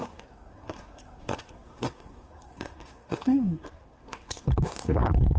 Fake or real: fake